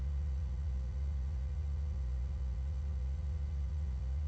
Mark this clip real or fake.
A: fake